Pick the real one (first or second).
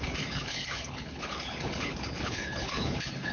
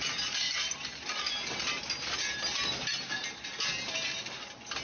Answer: second